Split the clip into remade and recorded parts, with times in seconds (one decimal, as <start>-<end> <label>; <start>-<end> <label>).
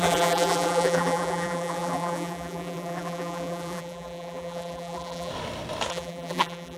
0.0-5.3 remade; 5.3-5.9 recorded; 5.9-6.8 remade